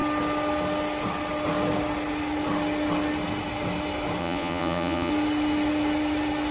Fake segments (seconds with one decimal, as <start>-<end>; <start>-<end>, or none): 4.2-5.1